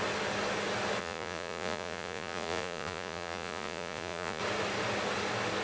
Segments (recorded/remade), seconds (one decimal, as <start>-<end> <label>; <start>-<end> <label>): 0.0-1.0 recorded; 1.0-4.4 remade; 4.4-5.6 recorded